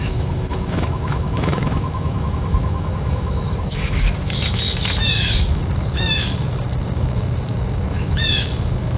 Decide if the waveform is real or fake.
fake